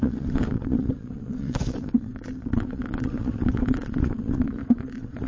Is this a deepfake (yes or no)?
yes